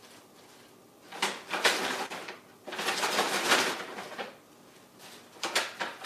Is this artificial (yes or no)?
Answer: no